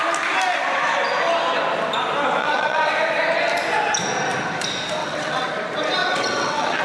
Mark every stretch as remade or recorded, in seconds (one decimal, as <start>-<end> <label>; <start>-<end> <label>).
0.0-2.4 recorded; 2.4-2.9 remade; 2.9-5.0 recorded; 5.0-5.5 remade; 5.5-6.0 recorded; 6.0-6.8 remade